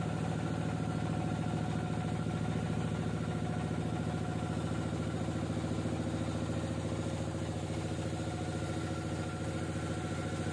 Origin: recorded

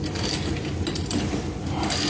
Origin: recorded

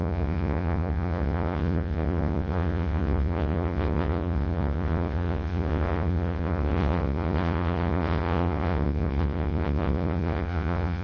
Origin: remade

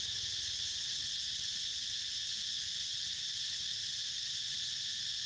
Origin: recorded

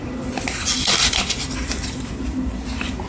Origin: recorded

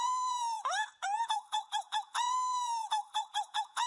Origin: remade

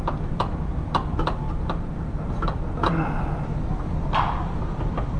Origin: recorded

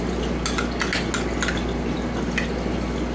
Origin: recorded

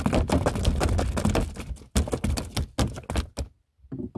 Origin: recorded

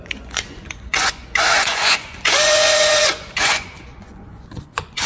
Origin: remade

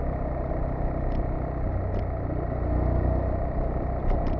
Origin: recorded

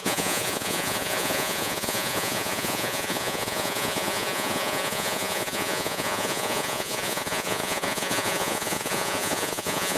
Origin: remade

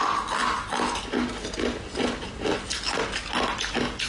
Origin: recorded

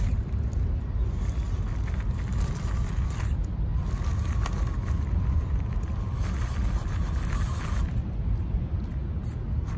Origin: recorded